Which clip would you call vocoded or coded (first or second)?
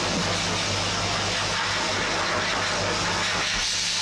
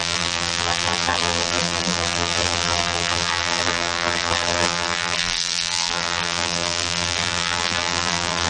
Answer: second